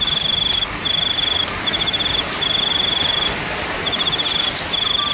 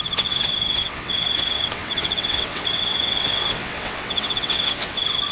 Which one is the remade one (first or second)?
second